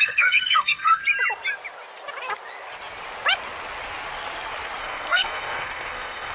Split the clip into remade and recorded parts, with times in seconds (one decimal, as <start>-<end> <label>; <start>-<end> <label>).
0.0-1.0 remade; 1.0-4.8 recorded; 4.8-6.3 remade